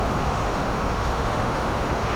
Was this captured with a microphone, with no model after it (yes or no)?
no